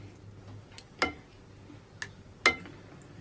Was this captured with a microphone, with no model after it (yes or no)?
yes